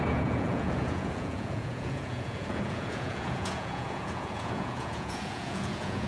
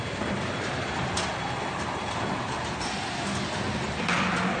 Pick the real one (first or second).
second